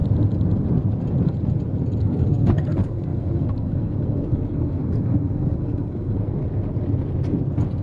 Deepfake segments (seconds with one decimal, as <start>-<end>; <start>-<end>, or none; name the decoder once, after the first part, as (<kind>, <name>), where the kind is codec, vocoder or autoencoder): 2.0-6.4 (codec, SNAC)